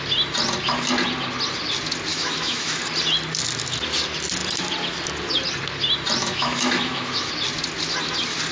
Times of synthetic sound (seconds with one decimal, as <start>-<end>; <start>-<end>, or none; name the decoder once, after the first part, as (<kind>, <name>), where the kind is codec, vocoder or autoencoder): 2.1-2.8 (autoencoder, DAC-VAE); 6.2-7.3